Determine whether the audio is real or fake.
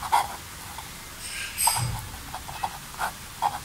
real